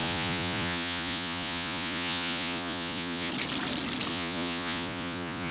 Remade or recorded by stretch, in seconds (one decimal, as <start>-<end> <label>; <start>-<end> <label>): 0.0-3.3 remade; 3.3-4.1 recorded; 4.1-5.5 remade